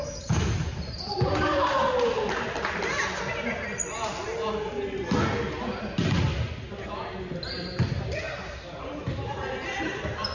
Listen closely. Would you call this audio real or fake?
real